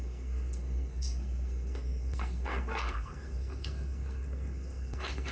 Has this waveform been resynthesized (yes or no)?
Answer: yes